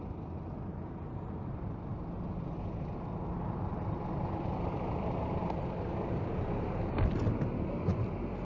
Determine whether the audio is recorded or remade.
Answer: recorded